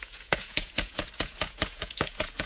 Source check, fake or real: fake